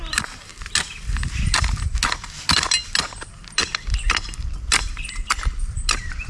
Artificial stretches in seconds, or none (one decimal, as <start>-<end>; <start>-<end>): none